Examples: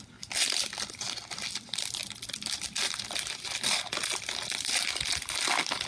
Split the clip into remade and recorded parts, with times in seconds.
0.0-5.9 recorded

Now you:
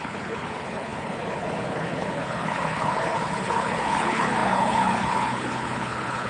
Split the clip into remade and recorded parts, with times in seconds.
0.0-6.3 remade

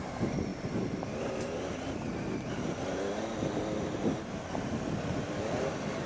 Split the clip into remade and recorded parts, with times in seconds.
0.0-6.1 recorded

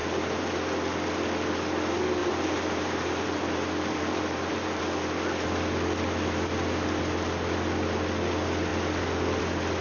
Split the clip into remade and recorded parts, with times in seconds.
0.0-0.5 remade; 0.5-2.2 recorded; 2.2-4.8 remade; 4.8-9.8 recorded

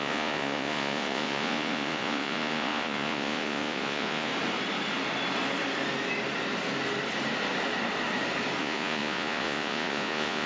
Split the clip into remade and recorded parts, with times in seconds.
0.0-4.3 remade; 4.3-8.6 recorded; 8.6-10.5 remade